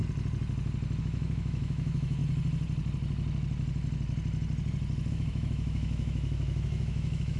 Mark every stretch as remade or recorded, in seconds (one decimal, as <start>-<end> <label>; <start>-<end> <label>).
0.0-1.0 recorded; 1.0-2.2 remade; 2.2-5.1 recorded; 5.1-7.4 remade